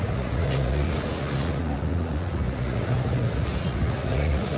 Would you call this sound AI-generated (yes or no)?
yes